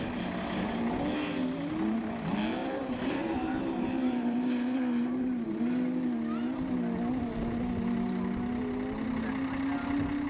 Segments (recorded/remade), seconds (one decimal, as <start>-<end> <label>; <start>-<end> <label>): 0.0-2.6 recorded; 2.6-5.6 remade; 5.6-10.3 recorded